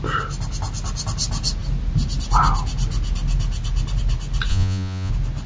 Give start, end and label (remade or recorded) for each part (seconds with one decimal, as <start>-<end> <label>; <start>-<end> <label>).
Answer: 0.0-4.5 recorded; 4.5-5.1 remade; 5.1-5.5 recorded